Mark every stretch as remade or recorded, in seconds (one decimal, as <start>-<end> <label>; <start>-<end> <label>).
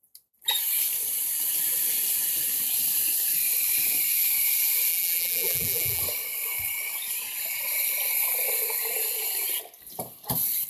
0.0-4.9 recorded; 4.9-6.0 remade; 6.0-10.7 recorded